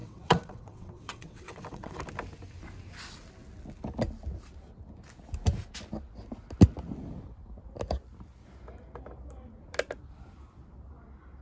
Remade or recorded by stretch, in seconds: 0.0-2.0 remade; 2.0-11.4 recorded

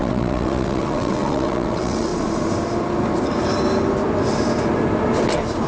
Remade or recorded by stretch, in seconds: 0.0-2.1 remade; 2.1-5.7 recorded

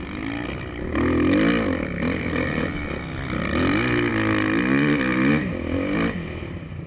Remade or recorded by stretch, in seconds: 0.0-6.9 recorded

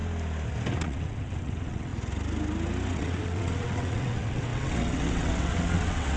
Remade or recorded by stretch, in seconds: 0.0-0.7 recorded; 0.7-1.9 remade; 1.9-2.9 recorded; 2.9-6.2 remade